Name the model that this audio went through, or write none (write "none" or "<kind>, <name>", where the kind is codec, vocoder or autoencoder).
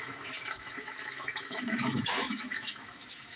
autoencoder, DAC-VAE